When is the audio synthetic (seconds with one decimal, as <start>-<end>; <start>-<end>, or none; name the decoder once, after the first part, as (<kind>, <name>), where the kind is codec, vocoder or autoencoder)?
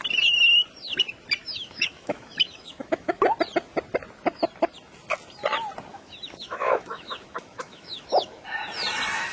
1.4-3.2 (autoencoder, DAC-VAE); 5.9-8.4